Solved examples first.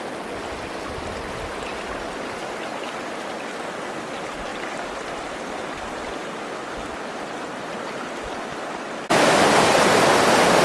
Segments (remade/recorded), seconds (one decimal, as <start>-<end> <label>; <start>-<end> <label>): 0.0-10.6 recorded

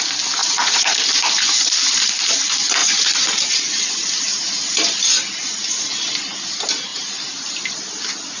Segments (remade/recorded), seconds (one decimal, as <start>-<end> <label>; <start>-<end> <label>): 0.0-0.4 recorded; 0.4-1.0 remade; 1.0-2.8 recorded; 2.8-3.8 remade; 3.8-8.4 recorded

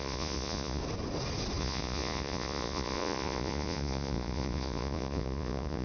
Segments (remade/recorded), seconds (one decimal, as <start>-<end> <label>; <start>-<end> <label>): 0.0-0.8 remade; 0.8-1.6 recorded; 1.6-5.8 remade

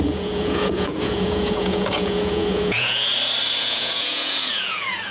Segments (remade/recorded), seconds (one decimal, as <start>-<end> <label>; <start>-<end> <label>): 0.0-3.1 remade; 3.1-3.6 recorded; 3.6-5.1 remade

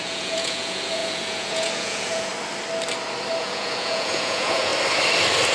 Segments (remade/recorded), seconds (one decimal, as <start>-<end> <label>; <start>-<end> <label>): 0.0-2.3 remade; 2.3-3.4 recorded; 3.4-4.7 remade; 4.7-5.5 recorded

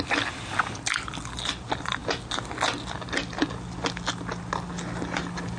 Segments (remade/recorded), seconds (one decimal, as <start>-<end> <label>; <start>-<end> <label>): 0.0-5.6 recorded

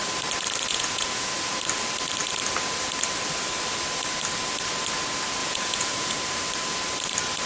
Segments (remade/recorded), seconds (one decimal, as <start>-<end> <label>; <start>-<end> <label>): 0.0-0.7 recorded; 0.7-1.3 remade; 1.3-5.4 recorded; 5.4-6.1 remade; 6.1-7.5 recorded

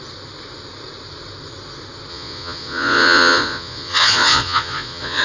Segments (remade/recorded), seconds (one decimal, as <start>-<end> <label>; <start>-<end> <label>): 0.0-2.1 recorded; 2.1-5.2 remade